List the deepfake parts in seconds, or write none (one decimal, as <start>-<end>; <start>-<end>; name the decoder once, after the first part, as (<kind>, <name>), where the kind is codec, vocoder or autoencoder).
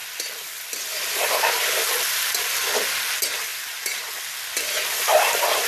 3.5-4.0 (vocoder, BigVGAN v2)